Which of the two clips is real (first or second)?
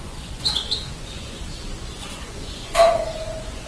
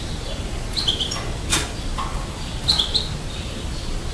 second